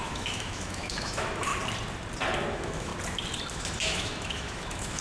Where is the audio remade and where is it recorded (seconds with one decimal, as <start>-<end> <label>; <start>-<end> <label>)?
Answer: 0.0-1.5 remade; 1.5-2.5 recorded; 2.5-2.9 remade; 2.9-3.5 recorded; 3.5-5.0 remade